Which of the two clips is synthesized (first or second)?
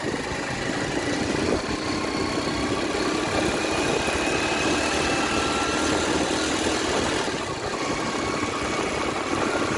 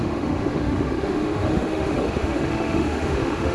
second